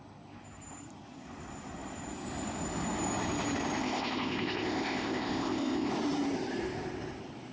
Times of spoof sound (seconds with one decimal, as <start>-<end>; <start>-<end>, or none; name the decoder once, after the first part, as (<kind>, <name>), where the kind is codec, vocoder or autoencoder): 3.8-5.9 (codec, ZipCodec)